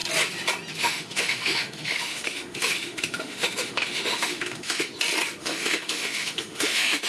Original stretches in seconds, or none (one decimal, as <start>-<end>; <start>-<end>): 0.0-0.8; 4.9-5.4